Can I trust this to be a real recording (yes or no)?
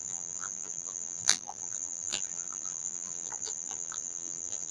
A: no